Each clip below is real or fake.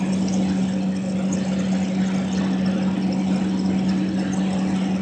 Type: real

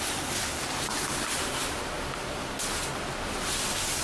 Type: real